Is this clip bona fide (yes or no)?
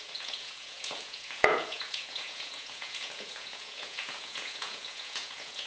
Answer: no